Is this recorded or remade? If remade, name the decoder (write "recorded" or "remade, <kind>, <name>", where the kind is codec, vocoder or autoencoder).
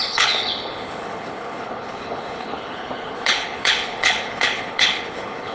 remade, codec, HILCodec